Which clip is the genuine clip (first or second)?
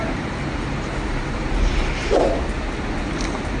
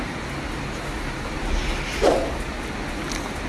second